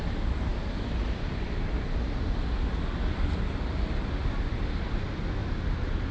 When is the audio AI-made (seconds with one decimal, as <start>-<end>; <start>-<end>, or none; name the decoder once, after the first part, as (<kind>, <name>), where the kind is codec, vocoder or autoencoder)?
none